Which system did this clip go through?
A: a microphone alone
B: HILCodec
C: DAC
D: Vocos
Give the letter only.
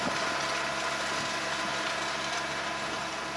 A